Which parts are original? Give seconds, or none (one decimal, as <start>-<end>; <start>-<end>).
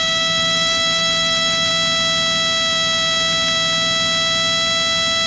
1.7-5.3